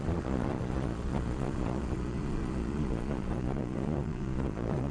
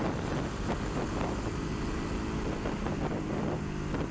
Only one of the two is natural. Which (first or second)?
second